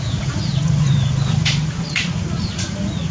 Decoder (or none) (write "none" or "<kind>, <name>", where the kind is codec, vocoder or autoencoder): vocoder, Vocos